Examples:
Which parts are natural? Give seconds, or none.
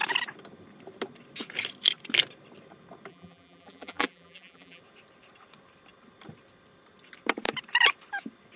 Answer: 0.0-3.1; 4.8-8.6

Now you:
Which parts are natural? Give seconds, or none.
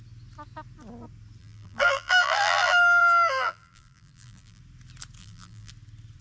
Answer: 0.0-1.4; 4.6-5.2; 5.7-6.2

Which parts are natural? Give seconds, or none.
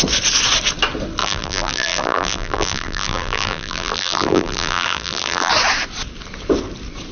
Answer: 0.0-1.2; 5.5-7.1